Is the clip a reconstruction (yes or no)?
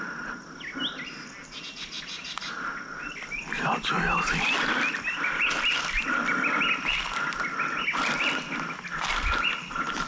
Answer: no